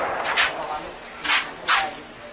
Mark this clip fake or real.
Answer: real